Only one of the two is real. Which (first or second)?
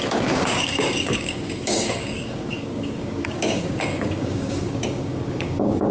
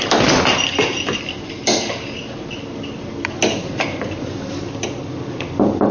second